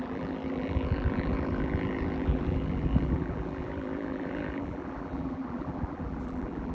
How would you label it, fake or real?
fake